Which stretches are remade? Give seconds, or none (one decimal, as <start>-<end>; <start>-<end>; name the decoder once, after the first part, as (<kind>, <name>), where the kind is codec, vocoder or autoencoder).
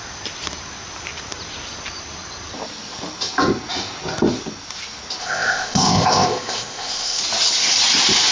5.2-7.2 (codec, ZipCodec)